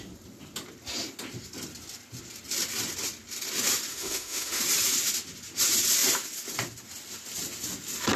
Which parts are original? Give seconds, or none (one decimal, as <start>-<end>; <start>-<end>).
0.0-3.9; 4.6-8.2